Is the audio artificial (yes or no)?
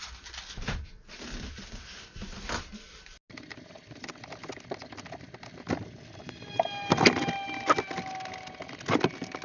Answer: no